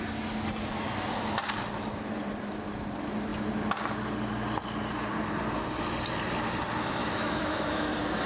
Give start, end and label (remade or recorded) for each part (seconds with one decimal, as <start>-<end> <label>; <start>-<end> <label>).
0.0-7.0 recorded; 7.0-7.9 remade; 7.9-8.3 recorded